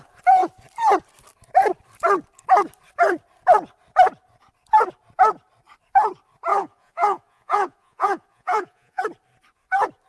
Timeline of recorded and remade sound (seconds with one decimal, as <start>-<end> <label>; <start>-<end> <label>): 0.0-6.5 recorded; 6.5-9.0 remade; 9.0-10.1 recorded

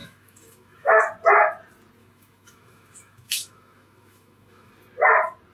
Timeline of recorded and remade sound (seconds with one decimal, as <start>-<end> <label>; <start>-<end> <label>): 0.0-1.0 remade; 1.0-2.0 recorded; 2.0-4.7 remade; 4.7-5.5 recorded